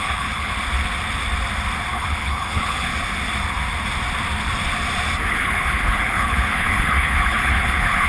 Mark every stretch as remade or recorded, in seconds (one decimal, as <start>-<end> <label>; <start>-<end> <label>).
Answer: 0.0-0.5 remade; 0.5-1.9 recorded; 1.9-2.9 remade; 2.9-5.3 recorded; 5.3-8.1 remade